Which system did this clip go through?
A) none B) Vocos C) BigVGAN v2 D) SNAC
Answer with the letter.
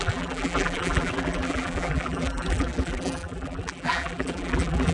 C